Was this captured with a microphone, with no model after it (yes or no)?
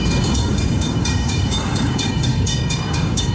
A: no